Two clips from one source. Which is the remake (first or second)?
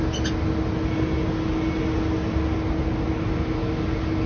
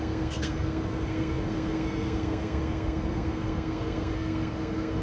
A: second